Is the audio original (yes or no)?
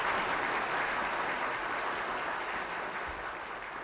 yes